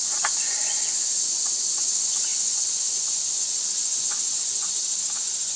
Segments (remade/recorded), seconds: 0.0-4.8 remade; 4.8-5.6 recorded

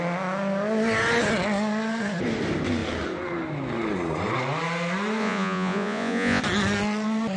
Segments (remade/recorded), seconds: 0.0-5.2 recorded; 5.2-6.4 remade; 6.4-7.4 recorded

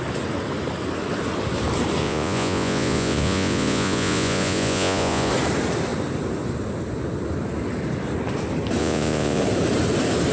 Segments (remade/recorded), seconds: 0.0-2.0 recorded; 2.0-5.3 remade; 5.3-8.8 recorded; 8.8-9.4 remade; 9.4-10.3 recorded

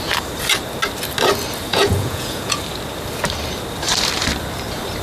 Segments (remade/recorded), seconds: 0.0-1.7 recorded; 1.7-2.6 remade; 2.6-5.0 recorded

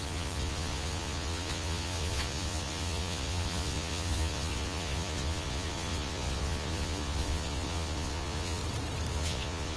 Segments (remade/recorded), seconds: 0.0-8.6 remade; 8.6-9.1 recorded; 9.1-9.8 remade